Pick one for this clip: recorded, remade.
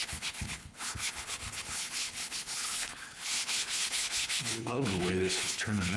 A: remade